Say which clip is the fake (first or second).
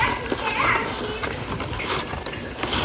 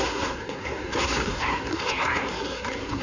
second